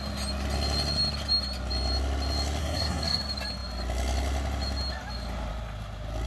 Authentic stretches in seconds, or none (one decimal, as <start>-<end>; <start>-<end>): 0.0-2.6; 3.2-6.3